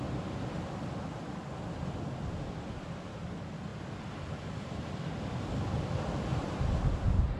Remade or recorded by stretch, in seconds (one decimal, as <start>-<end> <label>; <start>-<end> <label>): 0.0-3.7 recorded; 3.7-5.2 remade; 5.2-6.3 recorded; 6.3-6.9 remade; 6.9-7.4 recorded